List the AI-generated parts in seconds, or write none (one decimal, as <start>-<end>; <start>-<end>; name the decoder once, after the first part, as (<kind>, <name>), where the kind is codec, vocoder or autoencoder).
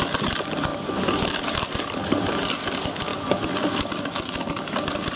0.0-0.7 (vocoder, BigVGAN v2); 1.4-5.2